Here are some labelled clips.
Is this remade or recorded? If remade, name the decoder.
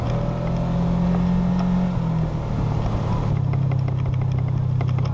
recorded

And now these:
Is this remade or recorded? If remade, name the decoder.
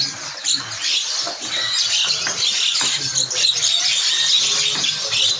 recorded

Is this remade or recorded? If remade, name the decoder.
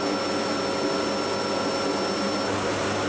recorded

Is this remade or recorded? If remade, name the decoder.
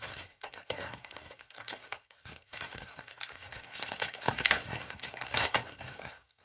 remade, codec, SNAC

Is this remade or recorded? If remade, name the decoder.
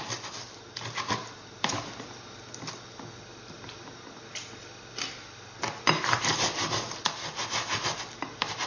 recorded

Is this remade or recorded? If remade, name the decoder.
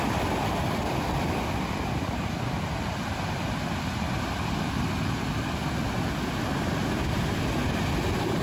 recorded